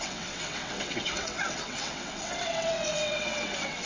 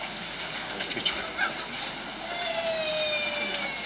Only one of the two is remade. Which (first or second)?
first